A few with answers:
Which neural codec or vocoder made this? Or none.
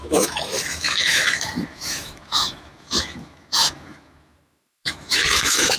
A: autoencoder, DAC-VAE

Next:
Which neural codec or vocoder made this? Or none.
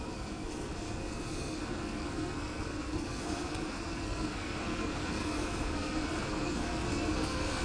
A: codec, SNAC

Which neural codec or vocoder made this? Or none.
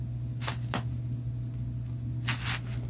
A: none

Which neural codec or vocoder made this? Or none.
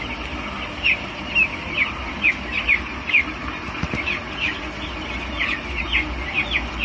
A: none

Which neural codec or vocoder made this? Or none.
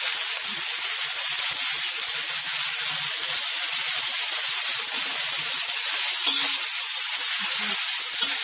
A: none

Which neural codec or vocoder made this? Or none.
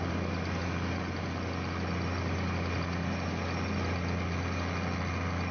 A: none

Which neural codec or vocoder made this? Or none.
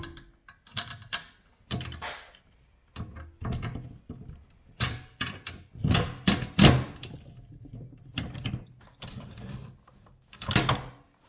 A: none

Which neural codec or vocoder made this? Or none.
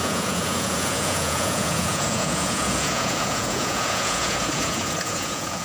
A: vocoder, Vocos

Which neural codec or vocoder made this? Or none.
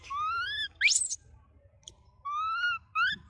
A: none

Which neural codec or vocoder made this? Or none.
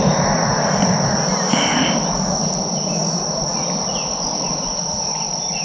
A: none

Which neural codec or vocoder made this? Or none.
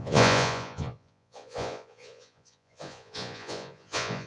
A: vocoder, Vocos